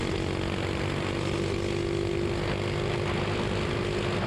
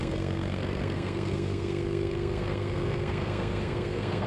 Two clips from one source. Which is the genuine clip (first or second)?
first